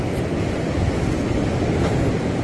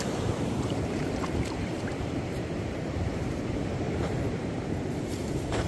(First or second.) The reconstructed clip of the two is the second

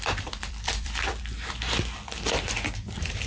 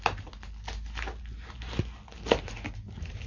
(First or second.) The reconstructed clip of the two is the first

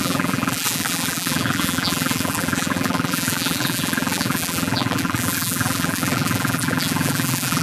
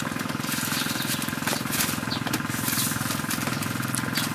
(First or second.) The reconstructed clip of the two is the first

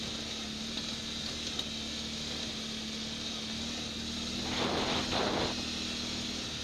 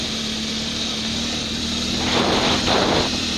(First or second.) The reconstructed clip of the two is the second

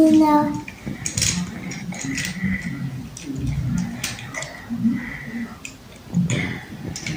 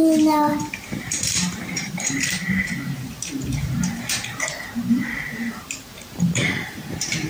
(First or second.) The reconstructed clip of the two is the second